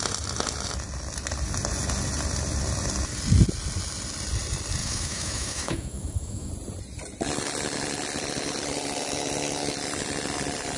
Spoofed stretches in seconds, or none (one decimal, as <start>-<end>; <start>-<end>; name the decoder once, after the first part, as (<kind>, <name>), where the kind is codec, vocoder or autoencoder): 4.8-6.5 (autoencoder, DAC-VAE)